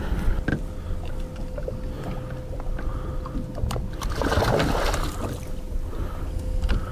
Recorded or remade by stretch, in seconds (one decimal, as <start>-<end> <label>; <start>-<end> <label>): 0.0-6.9 recorded